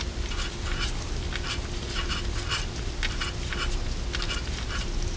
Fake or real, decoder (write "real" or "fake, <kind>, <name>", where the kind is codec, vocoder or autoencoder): real